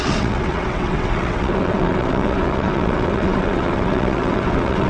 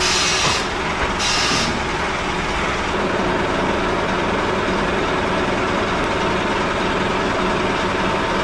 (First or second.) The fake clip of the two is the first